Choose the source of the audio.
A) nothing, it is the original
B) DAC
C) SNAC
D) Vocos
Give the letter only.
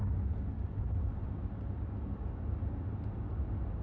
A